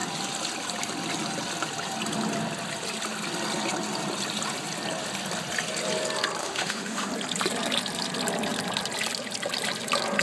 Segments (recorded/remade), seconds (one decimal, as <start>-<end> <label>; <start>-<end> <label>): 0.0-6.4 recorded; 6.4-7.1 remade; 7.1-10.2 recorded